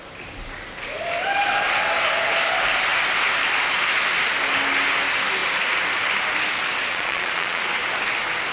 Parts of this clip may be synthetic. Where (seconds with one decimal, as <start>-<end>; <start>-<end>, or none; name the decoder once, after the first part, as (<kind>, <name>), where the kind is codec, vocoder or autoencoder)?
6.9-7.6 (vocoder, Vocos)